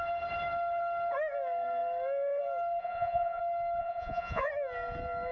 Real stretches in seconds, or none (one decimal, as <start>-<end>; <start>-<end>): 0.0-2.8; 3.4-3.8; 4.5-5.3